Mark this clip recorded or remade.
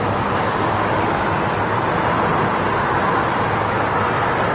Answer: recorded